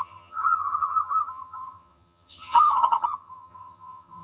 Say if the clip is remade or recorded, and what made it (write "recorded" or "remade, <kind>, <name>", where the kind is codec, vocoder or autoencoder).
remade, vocoder, HiFi-GAN